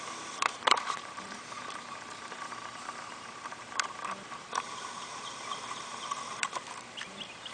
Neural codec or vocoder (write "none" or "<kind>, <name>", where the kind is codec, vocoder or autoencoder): vocoder, BigVGAN v2